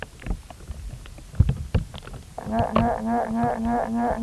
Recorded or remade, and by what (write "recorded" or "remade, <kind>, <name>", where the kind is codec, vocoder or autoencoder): recorded